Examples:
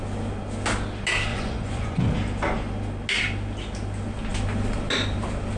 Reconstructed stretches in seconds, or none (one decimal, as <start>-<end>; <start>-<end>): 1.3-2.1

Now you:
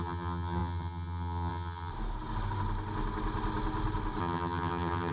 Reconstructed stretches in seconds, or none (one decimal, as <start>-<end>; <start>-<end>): 0.0-1.9; 4.2-5.1

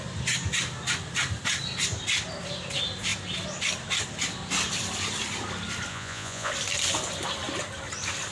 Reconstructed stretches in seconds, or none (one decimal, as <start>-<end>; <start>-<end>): 5.9-6.5